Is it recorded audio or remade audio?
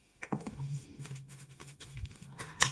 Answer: remade